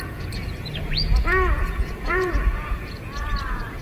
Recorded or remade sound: remade